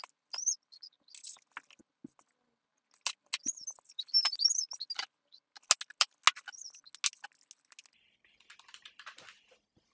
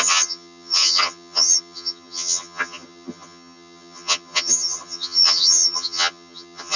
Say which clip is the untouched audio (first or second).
first